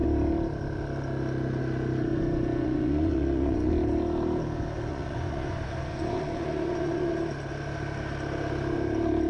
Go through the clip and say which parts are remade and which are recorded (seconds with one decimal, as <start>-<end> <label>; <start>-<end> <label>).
0.0-2.1 recorded; 2.1-3.7 remade; 3.7-4.9 recorded; 4.9-7.1 remade; 7.1-9.3 recorded